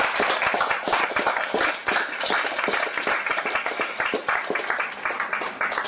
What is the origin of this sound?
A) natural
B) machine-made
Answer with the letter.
A